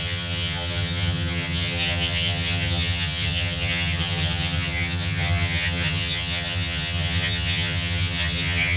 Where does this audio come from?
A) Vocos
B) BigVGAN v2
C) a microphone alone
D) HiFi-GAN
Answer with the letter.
D